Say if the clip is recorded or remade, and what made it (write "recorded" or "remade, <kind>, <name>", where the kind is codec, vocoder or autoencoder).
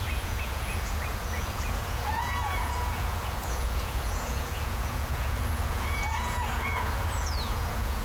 remade, vocoder, Vocos